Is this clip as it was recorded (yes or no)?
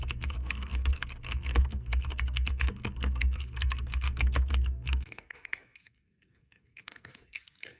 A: no